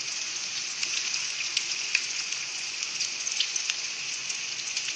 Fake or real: fake